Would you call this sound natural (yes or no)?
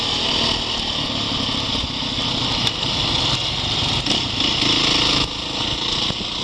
yes